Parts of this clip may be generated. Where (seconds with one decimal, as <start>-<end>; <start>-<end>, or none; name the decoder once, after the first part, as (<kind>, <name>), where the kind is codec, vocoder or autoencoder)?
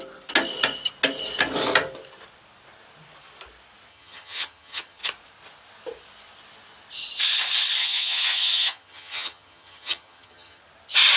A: 3.9-5.0 (vocoder, HiFi-GAN); 7.8-10.6